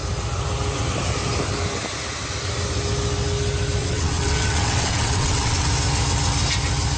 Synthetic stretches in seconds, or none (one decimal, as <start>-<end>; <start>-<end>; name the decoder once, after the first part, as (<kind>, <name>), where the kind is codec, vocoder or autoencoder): 3.8-5.7 (vocoder, WaveNeXt)